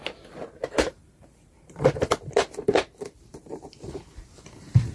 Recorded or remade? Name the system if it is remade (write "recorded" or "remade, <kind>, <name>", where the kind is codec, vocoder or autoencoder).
remade, vocoder, BigVGAN v2